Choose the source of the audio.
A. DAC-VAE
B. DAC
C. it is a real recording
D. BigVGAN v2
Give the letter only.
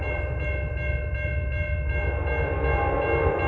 C